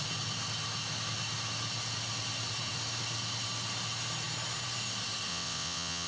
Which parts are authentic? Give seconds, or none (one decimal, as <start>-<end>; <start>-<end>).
0.0-5.3